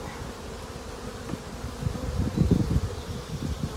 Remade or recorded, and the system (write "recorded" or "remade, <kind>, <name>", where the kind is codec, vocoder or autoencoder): recorded